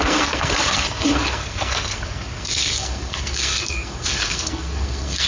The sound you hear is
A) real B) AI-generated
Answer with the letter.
B